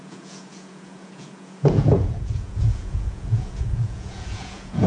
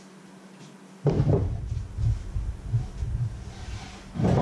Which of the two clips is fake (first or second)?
first